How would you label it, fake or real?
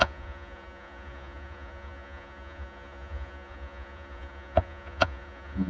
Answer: fake